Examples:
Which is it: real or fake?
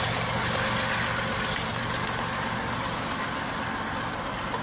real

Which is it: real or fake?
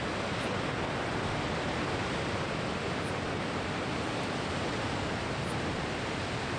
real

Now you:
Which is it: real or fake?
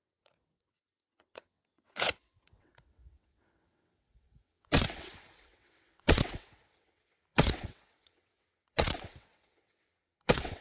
fake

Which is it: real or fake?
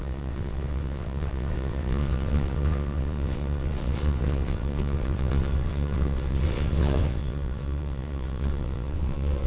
fake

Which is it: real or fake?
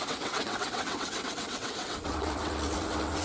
fake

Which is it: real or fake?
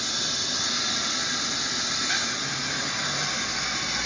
real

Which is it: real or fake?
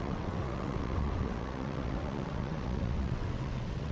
fake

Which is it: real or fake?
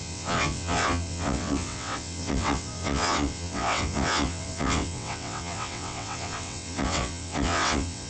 fake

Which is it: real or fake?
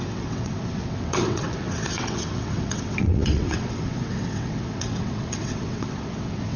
fake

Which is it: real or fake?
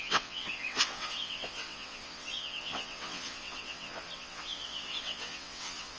fake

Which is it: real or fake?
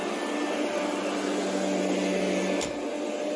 real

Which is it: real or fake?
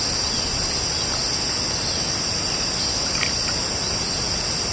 real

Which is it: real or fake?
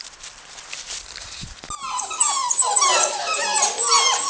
real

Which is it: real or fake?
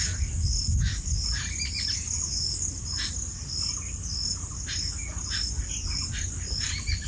real